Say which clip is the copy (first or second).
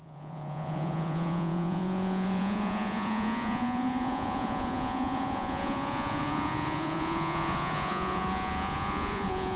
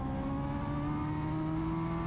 first